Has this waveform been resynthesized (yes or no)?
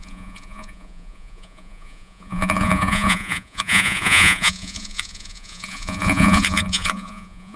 yes